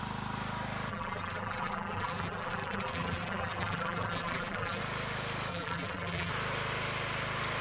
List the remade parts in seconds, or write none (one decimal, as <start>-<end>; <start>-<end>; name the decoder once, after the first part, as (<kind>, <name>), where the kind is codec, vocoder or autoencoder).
0.9-4.8 (vocoder, BigVGAN v2); 5.5-6.3